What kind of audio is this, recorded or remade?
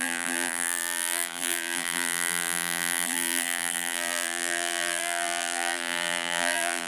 remade